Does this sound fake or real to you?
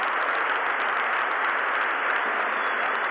real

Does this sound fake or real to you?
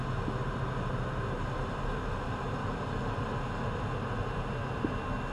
real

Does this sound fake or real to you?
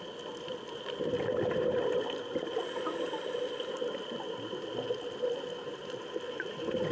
real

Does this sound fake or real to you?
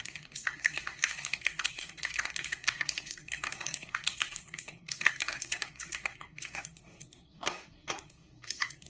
fake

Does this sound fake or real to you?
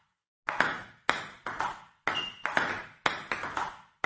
real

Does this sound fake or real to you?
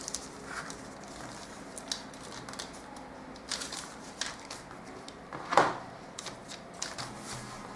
real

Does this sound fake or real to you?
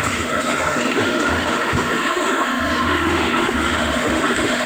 fake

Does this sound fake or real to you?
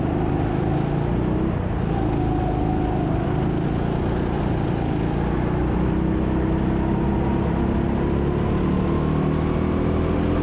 real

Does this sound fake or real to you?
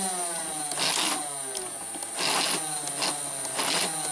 real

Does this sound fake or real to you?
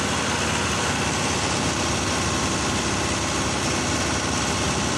real